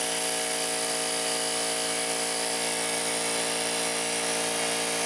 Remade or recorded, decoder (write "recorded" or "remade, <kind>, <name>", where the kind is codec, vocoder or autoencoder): recorded